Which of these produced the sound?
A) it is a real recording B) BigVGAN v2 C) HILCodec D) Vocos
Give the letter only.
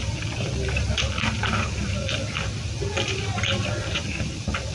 B